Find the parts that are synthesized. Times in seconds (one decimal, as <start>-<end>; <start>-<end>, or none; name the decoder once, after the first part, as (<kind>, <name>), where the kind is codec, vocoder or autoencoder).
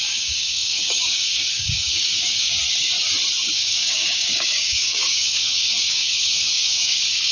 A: 0.0-2.6 (codec, DAC); 3.4-7.3